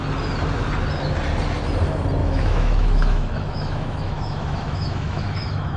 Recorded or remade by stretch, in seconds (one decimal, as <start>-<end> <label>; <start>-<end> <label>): 0.0-2.2 recorded; 2.2-5.8 remade